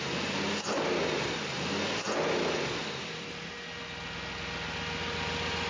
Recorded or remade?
recorded